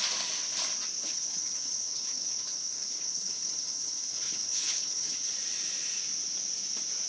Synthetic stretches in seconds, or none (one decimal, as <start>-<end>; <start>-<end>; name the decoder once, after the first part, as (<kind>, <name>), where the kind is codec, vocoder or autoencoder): 1.0-5.3 (codec, HILCodec)